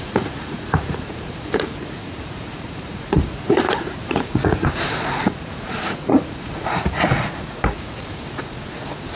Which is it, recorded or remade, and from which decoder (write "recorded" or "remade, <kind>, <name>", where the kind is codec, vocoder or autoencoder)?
remade, vocoder, Vocos